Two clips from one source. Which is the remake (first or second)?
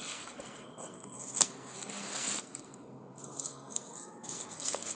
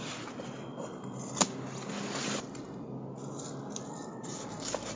first